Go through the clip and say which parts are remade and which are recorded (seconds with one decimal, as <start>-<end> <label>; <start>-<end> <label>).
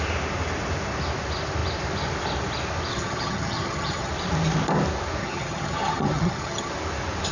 0.0-2.9 recorded; 2.9-4.1 remade; 4.1-5.2 recorded; 5.2-6.7 remade; 6.7-7.3 recorded